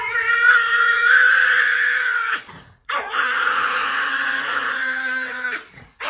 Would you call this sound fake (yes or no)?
yes